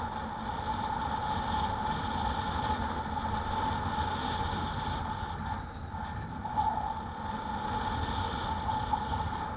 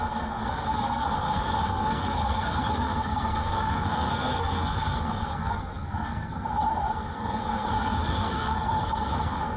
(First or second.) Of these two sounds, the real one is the first